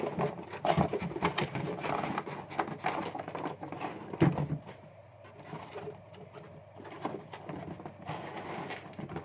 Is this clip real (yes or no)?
yes